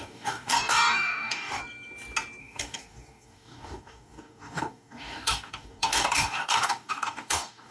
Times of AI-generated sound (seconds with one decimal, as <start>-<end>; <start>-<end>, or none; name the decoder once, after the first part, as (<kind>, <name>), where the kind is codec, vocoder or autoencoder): 0.0-1.6 (codec, DAC); 2.4-7.7